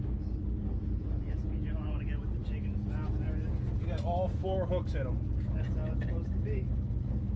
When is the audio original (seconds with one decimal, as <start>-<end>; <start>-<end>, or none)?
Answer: 0.0-7.4